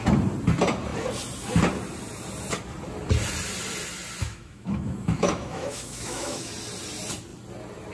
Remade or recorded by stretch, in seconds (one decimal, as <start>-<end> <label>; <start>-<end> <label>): 0.0-4.2 recorded; 4.2-6.5 remade; 6.5-7.9 recorded